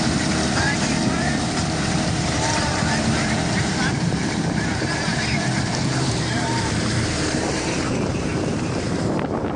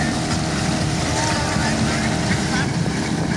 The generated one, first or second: first